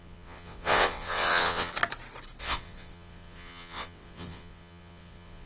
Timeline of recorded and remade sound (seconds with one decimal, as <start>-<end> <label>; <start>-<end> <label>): 0.0-1.7 remade; 1.7-2.4 recorded; 2.4-5.5 remade